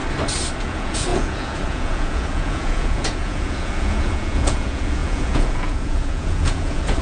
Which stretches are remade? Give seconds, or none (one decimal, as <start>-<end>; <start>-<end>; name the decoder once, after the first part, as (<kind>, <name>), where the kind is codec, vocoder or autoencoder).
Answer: 0.6-7.0 (vocoder, Vocos)